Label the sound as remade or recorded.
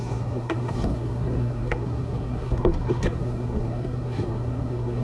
remade